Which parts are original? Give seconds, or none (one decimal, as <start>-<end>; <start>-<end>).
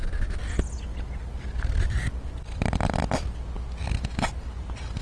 0.0-0.9; 3.9-5.0